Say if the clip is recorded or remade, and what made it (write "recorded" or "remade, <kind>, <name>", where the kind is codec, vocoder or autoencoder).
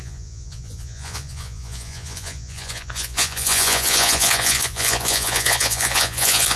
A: remade, vocoder, Vocos